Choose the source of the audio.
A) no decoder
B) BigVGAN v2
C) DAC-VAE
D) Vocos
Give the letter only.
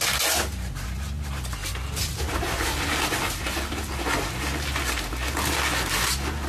A